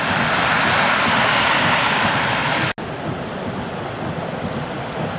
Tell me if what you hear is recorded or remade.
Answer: recorded